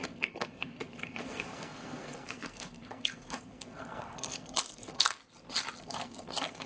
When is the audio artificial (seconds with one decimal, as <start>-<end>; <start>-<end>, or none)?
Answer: 0.0-5.2; 5.8-6.7